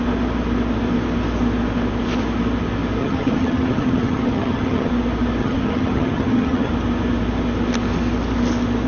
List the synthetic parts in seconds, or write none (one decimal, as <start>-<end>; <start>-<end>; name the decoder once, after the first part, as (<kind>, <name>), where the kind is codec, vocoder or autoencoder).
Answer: 3.0-4.9 (vocoder, HiFi-GAN); 5.4-6.7